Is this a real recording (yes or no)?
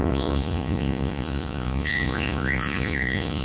no